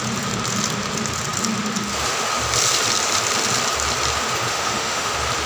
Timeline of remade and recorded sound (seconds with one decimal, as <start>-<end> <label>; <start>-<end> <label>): 0.0-4.5 recorded; 4.5-5.1 remade; 5.1-5.5 recorded